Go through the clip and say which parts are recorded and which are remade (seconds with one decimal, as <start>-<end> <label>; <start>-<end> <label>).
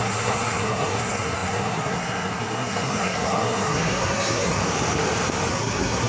0.0-4.6 remade; 4.6-5.5 recorded; 5.5-6.1 remade